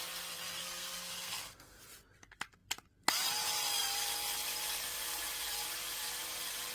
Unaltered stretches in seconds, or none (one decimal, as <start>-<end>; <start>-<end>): 0.0-0.6; 1.8-6.7